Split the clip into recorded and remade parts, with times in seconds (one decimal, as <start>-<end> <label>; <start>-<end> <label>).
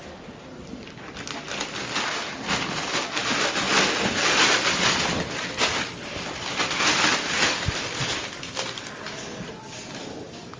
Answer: 0.0-10.6 recorded